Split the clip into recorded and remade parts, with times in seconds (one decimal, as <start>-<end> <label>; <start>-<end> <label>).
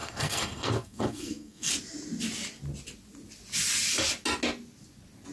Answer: 0.0-1.7 remade; 1.7-5.3 recorded